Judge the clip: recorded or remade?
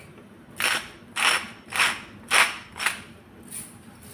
recorded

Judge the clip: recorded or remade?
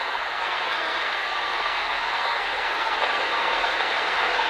remade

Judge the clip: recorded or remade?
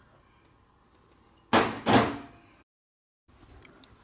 recorded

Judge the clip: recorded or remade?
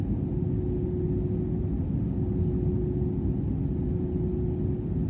recorded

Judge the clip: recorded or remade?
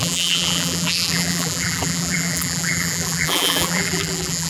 remade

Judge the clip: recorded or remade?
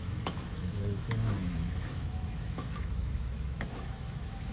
remade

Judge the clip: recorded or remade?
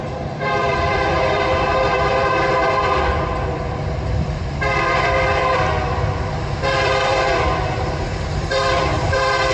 remade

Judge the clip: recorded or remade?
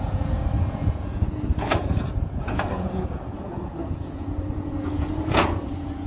remade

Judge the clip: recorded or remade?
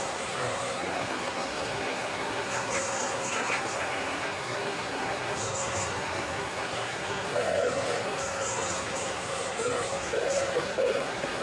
remade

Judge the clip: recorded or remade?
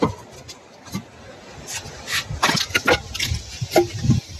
recorded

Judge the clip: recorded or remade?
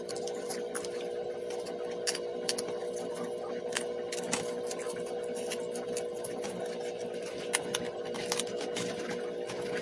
recorded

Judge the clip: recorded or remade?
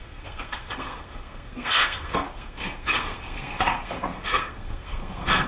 remade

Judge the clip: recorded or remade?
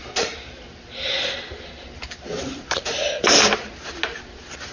recorded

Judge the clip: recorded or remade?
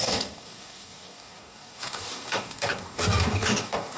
remade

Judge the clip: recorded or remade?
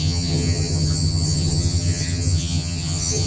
remade